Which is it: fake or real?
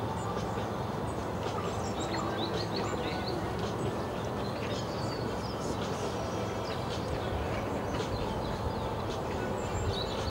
real